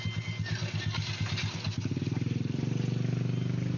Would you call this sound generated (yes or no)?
no